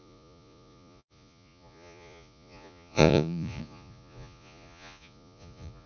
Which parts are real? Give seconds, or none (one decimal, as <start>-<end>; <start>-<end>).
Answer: none